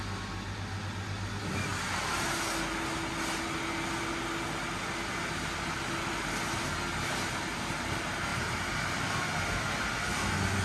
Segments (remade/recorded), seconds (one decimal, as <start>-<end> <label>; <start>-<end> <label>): 0.0-10.6 recorded